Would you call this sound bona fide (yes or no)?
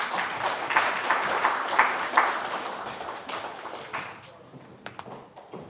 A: yes